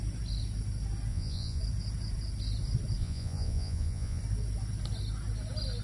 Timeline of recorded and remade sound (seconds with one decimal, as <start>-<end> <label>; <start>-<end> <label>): 0.0-1.1 recorded; 1.1-1.6 remade; 1.6-3.0 recorded; 3.0-4.2 remade; 4.2-5.8 recorded